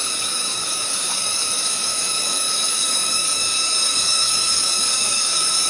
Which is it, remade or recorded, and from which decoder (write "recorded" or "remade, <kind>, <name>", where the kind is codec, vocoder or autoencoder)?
remade, codec, DAC